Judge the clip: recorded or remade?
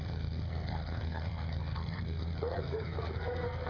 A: remade